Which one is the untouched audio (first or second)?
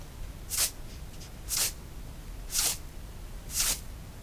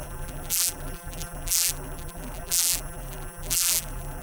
first